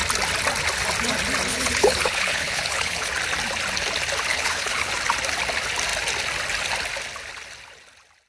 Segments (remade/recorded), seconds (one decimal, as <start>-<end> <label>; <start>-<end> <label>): 0.0-1.5 recorded; 1.5-3.1 remade; 3.1-4.3 recorded; 4.3-4.9 remade; 4.9-8.3 recorded